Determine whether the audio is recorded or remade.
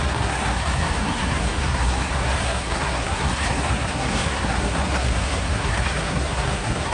remade